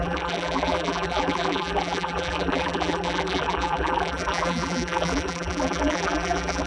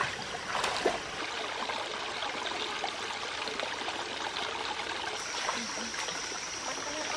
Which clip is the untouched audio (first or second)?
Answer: second